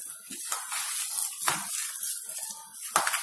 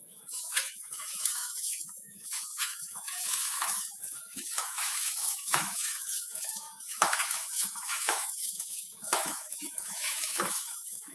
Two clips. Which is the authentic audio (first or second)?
first